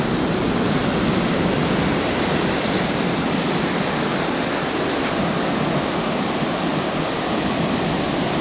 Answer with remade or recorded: recorded